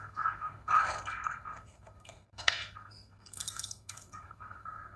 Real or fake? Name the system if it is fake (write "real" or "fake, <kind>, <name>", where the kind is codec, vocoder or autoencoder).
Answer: fake, codec, SNAC